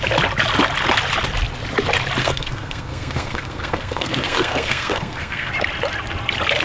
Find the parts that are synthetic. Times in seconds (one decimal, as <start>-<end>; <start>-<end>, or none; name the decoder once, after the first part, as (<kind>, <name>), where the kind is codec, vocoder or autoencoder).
2.2-5.5 (codec, SNAC)